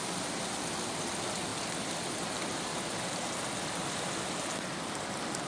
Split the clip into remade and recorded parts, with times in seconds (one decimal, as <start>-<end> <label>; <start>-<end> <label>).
0.0-5.5 recorded